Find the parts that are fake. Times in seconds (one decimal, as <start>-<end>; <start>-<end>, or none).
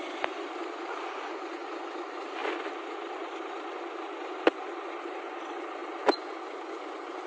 none